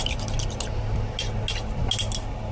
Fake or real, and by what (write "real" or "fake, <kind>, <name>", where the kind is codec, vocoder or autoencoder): real